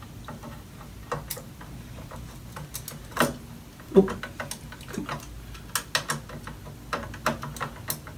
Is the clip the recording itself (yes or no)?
yes